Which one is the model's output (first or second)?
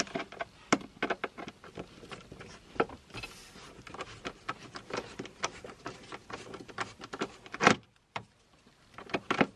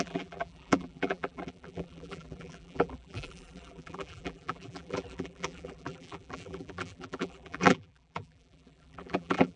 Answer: second